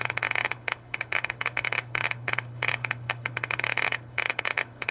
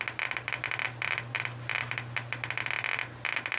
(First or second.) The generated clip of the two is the first